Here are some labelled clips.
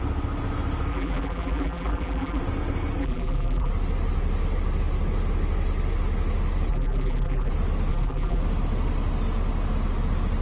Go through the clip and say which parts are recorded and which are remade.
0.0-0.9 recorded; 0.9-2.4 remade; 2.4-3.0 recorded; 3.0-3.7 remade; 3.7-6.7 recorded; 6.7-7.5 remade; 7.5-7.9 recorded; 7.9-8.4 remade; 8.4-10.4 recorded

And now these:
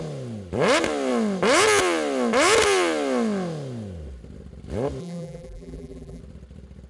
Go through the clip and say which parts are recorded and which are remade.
0.0-5.0 recorded; 5.0-6.2 remade; 6.2-6.9 recorded

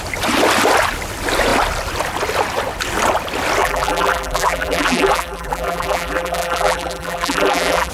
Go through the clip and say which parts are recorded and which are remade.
0.0-3.6 recorded; 3.6-7.9 remade

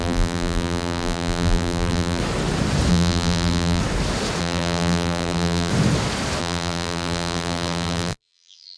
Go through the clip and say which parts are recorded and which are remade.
0.0-2.2 remade; 2.2-2.9 recorded; 2.9-3.8 remade; 3.8-4.4 recorded; 4.4-5.7 remade; 5.7-6.4 recorded; 6.4-8.8 remade

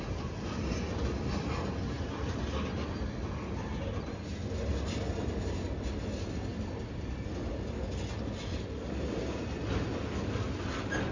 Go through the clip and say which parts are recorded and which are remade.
0.0-11.1 recorded

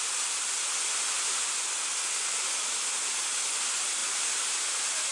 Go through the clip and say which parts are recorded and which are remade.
0.0-4.0 recorded; 4.0-4.6 remade; 4.6-5.1 recorded

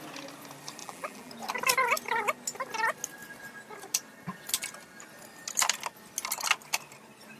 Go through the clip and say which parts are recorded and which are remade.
0.0-0.8 recorded; 0.8-1.3 remade; 1.3-7.4 recorded

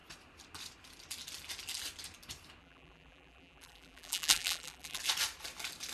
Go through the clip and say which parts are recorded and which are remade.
0.0-2.6 recorded; 2.6-5.0 remade; 5.0-5.9 recorded